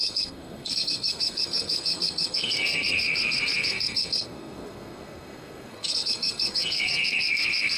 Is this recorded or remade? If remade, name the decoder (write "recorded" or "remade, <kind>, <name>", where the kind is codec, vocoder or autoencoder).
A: remade, codec, SNAC